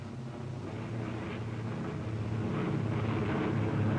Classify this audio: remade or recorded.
recorded